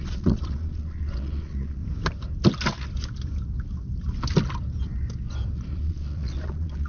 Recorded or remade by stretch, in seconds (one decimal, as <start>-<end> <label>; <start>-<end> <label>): 0.0-1.8 remade; 1.8-5.7 recorded; 5.7-6.9 remade